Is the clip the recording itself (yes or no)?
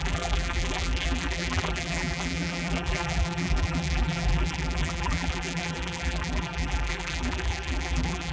no